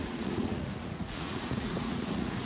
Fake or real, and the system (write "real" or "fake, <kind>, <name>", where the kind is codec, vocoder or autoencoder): fake, vocoder, Vocos